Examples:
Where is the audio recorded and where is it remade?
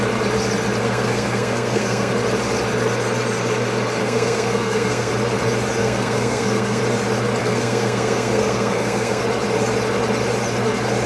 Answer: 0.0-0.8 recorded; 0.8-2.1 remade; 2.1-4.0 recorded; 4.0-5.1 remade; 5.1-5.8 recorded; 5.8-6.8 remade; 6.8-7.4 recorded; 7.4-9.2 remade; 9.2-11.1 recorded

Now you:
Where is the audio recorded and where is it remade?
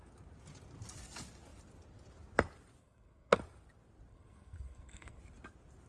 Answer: 0.0-2.8 recorded; 2.8-3.4 remade; 3.4-4.1 recorded; 4.1-5.2 remade; 5.2-5.9 recorded